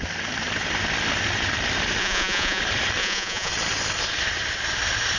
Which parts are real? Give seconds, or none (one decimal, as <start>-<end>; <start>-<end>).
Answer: 0.0-2.0; 2.6-3.0; 3.5-5.2